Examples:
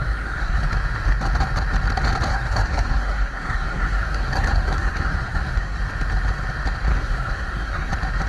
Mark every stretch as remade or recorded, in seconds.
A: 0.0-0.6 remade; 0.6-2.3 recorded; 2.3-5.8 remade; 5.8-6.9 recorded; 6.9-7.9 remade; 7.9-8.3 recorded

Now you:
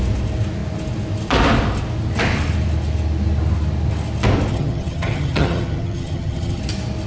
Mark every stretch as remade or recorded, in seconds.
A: 0.0-4.5 recorded; 4.5-6.6 remade; 6.6-7.1 recorded